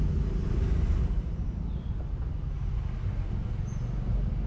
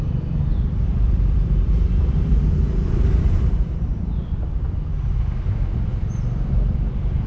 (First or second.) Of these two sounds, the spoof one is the second